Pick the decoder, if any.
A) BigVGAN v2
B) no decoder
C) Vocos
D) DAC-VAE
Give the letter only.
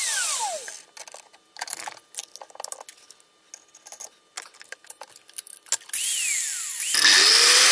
B